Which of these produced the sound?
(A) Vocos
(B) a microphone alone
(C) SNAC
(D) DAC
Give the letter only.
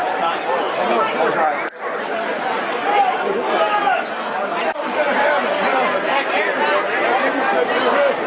B